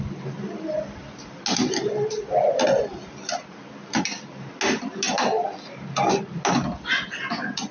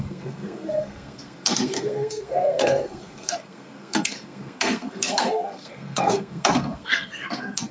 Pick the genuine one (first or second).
first